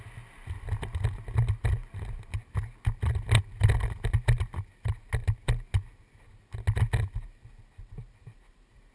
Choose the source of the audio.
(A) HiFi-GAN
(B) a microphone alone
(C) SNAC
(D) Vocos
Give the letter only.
B